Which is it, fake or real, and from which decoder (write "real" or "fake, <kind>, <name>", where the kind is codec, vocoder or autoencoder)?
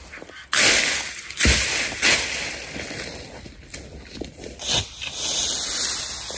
real